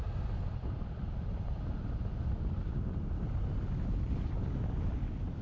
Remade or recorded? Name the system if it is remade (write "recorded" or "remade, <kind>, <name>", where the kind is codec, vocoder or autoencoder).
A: recorded